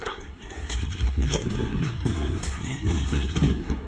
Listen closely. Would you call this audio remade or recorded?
remade